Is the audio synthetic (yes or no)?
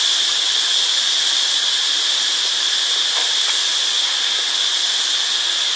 yes